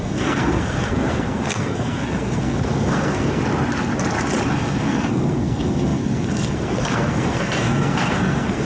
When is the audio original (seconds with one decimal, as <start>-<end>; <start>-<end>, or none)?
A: 3.4-4.5